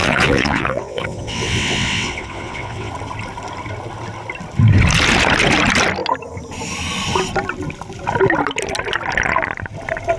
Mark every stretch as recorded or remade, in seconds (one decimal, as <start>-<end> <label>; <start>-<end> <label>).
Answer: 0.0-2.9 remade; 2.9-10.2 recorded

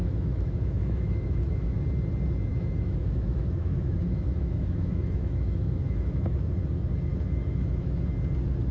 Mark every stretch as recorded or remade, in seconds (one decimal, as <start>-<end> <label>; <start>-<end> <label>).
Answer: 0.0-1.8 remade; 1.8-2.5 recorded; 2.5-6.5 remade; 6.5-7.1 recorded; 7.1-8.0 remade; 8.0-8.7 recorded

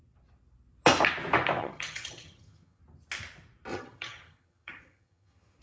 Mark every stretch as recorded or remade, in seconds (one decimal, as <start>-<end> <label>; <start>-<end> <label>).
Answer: 0.0-1.6 recorded; 1.6-2.8 remade; 2.8-3.7 recorded; 3.7-5.6 remade

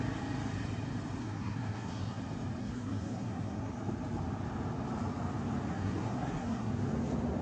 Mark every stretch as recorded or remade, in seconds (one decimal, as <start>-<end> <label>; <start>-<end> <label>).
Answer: 0.0-1.2 recorded; 1.2-2.2 remade; 2.2-2.6 recorded; 2.6-3.7 remade; 3.7-5.7 recorded; 5.7-6.7 remade; 6.7-7.4 recorded

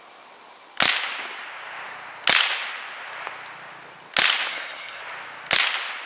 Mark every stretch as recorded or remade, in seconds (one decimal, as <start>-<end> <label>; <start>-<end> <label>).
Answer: 0.0-4.5 recorded; 4.5-5.0 remade; 5.0-6.1 recorded